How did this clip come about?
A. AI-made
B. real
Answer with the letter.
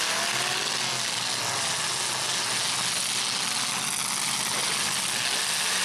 B